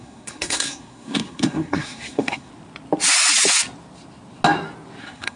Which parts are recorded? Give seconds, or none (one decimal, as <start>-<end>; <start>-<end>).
2.5-5.0